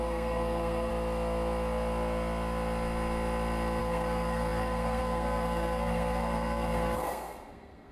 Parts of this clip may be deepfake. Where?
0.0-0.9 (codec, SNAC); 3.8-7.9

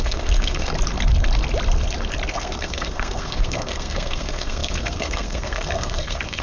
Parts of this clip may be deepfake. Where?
0.0-0.7 (codec, SNAC); 2.3-6.4

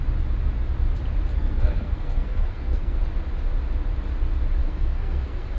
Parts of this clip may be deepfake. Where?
1.3-3.0 (codec, SNAC); 4.6-5.6

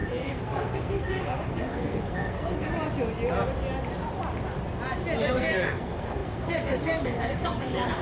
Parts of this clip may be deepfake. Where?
0.0-2.7 (codec, SNAC); 5.2-8.0